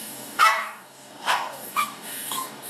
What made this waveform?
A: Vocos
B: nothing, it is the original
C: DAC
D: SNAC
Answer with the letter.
C